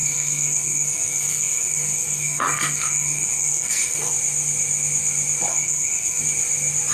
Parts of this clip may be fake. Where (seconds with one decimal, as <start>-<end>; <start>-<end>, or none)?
0.0-4.1; 5.5-6.2